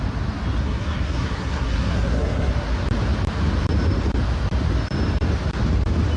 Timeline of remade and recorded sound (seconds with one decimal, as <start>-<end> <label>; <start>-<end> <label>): 0.0-0.6 recorded; 0.6-2.5 remade; 2.5-6.2 recorded